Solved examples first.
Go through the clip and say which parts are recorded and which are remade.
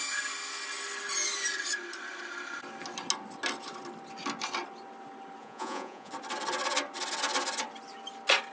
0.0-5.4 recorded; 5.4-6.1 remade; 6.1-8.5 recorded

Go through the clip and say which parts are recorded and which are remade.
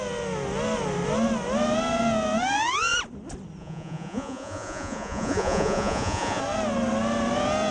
0.0-3.6 recorded; 3.6-6.4 remade; 6.4-7.7 recorded